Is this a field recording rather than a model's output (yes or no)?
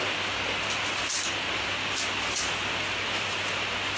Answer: yes